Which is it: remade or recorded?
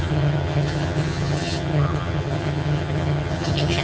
remade